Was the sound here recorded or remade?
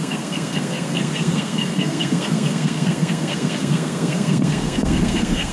remade